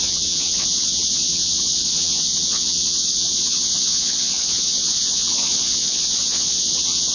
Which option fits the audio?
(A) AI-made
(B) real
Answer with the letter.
A